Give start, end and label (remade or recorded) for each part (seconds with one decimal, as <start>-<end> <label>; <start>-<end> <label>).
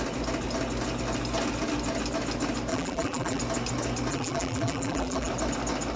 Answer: 0.0-2.7 recorded; 2.7-3.4 remade; 3.4-4.1 recorded; 4.1-5.3 remade; 5.3-6.0 recorded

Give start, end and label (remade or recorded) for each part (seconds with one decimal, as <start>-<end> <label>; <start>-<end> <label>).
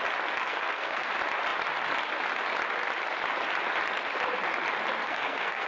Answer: 0.0-0.4 recorded; 0.4-1.1 remade; 1.1-5.0 recorded; 5.0-5.7 remade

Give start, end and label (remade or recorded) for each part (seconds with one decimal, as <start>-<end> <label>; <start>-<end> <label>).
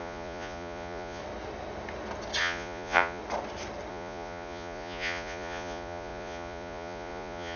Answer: 0.0-1.2 remade; 1.2-2.4 recorded; 2.4-3.2 remade; 3.2-3.9 recorded; 3.9-7.6 remade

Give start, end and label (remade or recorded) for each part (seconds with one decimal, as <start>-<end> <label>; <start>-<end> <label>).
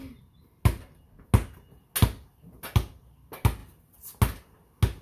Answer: 0.0-5.0 recorded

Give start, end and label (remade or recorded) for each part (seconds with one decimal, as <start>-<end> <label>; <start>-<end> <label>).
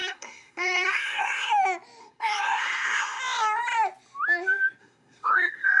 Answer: 0.0-1.5 remade; 1.5-2.0 recorded; 2.0-3.2 remade; 3.2-4.8 recorded; 4.8-5.8 remade